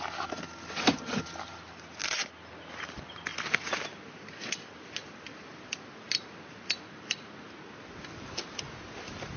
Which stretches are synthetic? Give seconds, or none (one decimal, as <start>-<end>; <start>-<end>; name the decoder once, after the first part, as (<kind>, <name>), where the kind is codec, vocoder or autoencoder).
none

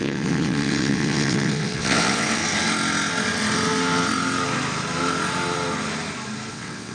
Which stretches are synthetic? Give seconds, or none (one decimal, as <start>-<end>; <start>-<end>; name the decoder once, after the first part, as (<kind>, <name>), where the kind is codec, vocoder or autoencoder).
0.0-2.4 (vocoder, WaveNeXt); 6.5-6.9

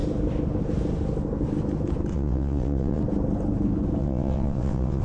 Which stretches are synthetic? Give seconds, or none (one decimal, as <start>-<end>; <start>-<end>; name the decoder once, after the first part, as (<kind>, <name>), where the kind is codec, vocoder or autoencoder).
2.1-3.0 (vocoder, WaveNeXt); 4.0-5.0

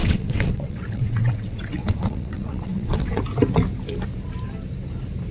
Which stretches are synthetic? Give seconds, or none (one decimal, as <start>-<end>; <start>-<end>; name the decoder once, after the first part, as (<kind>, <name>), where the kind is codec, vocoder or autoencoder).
0.0-3.2 (vocoder, WaveNeXt)

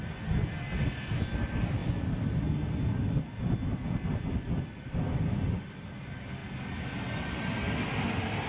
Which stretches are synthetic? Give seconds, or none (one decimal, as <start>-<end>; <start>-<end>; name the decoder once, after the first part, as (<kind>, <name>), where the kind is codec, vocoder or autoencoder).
none

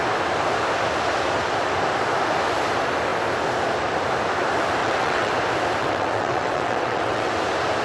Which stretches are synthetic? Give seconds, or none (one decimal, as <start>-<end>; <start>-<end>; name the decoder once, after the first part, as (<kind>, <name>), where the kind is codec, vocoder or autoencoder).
4.8-5.3 (vocoder, WaveNeXt); 5.8-7.3

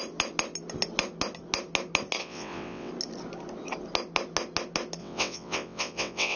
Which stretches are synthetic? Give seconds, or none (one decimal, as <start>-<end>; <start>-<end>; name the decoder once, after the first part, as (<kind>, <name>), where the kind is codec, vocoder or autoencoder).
2.2-2.9 (vocoder, WaveNeXt); 5.0-6.4